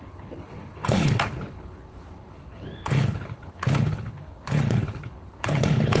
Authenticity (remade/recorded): remade